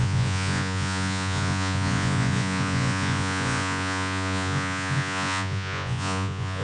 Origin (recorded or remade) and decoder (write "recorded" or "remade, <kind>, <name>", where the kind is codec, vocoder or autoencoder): remade, vocoder, Vocos